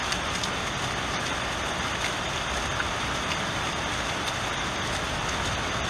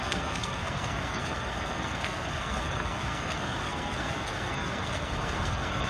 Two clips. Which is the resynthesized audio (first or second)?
second